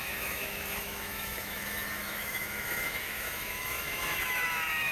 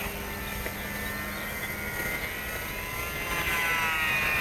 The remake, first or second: first